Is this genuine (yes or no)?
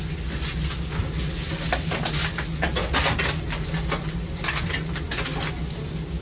yes